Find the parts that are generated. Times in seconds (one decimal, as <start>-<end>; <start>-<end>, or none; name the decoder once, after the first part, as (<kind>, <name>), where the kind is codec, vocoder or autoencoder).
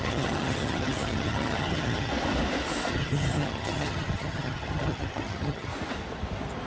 0.0-2.1 (vocoder, HiFi-GAN); 2.9-5.7